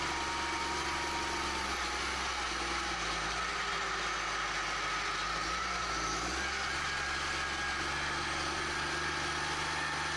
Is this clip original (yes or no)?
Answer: yes